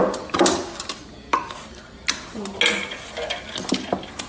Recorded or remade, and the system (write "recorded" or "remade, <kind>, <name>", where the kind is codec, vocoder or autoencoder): recorded